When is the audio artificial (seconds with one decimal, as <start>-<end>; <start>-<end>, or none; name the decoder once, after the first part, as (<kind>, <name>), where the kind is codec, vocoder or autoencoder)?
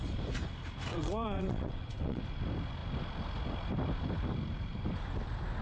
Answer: 0.9-2.2 (vocoder, WaveNeXt)